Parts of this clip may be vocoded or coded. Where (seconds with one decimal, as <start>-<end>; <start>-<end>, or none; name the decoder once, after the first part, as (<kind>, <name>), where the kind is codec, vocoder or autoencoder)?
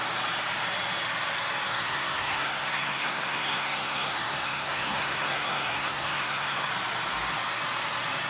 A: 1.7-6.7 (codec, SNAC)